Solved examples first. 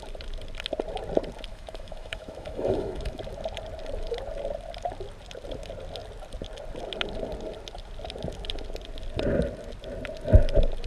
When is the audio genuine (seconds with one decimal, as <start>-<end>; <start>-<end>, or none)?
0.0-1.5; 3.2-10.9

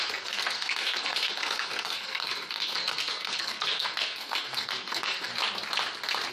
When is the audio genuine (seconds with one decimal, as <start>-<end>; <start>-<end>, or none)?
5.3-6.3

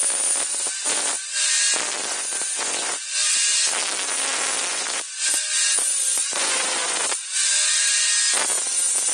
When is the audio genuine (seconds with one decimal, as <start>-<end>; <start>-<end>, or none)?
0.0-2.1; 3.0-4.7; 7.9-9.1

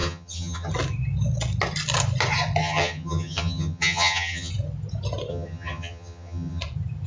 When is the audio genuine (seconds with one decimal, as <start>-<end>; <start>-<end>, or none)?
0.7-2.6; 4.5-5.3; 6.6-7.1

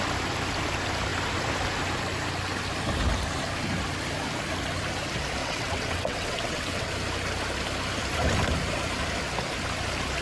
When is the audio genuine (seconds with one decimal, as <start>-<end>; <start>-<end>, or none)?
0.0-5.4; 6.9-10.2

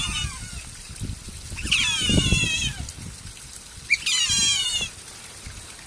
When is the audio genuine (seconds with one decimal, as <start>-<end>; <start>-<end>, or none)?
0.0-5.9